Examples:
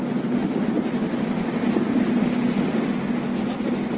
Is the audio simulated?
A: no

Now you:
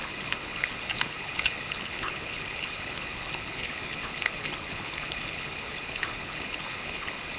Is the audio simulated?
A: yes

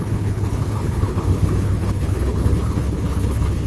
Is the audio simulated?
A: yes